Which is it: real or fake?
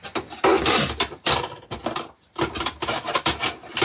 real